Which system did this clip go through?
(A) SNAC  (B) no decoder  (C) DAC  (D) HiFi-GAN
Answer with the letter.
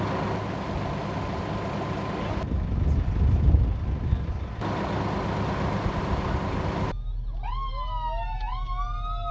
B